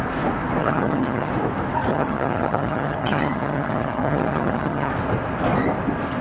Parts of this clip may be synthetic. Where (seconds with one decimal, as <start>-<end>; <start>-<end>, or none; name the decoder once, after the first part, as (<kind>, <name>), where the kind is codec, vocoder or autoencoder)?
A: 0.6-1.3 (vocoder, HiFi-GAN); 1.9-4.9